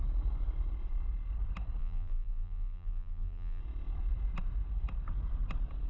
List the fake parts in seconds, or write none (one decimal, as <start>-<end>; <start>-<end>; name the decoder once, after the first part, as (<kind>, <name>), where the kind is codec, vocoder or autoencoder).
1.8-3.6 (vocoder, BigVGAN v2)